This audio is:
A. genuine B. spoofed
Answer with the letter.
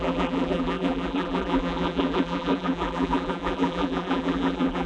B